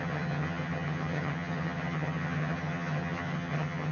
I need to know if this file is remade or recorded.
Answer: remade